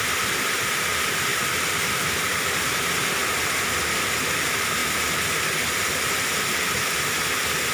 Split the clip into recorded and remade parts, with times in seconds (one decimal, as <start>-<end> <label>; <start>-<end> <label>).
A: 0.0-7.7 recorded